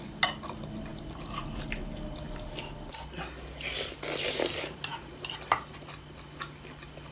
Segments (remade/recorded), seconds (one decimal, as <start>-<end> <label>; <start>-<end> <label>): 0.0-7.1 recorded